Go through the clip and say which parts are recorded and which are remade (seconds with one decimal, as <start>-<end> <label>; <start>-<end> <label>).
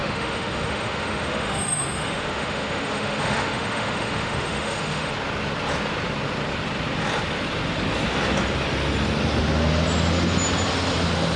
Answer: 0.0-5.1 remade; 5.1-11.4 recorded